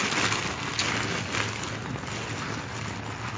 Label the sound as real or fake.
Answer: real